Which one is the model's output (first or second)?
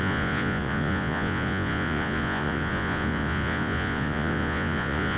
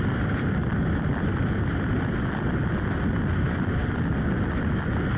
first